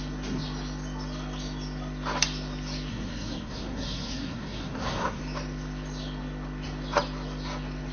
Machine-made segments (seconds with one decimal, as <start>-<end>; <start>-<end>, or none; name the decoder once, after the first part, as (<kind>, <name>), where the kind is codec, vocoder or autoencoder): 2.9-5.2 (codec, SNAC)